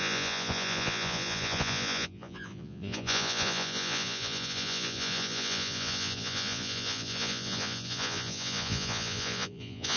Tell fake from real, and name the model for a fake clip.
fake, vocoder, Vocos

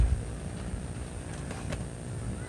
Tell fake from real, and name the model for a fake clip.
real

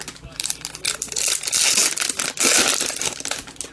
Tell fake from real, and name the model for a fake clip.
real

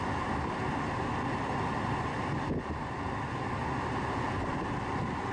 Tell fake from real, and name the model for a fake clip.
real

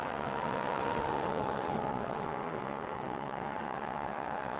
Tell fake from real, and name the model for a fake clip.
fake, vocoder, WaveNeXt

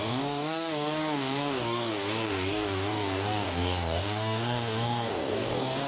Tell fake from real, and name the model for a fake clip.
fake, codec, DAC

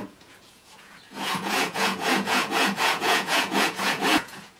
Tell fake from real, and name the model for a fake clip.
fake, vocoder, Vocos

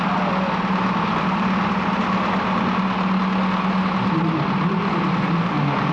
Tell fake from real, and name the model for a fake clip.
real